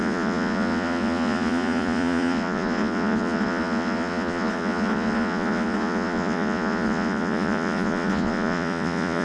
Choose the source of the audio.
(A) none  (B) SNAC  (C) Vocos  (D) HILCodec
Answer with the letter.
C